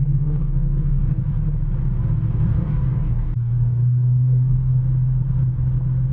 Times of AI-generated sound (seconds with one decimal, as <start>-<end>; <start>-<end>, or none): 0.0-1.2; 2.3-4.8